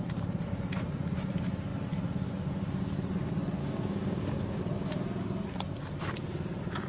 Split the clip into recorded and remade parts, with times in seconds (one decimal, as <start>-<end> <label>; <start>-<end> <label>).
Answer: 0.0-3.6 recorded; 3.6-4.6 remade; 4.6-6.9 recorded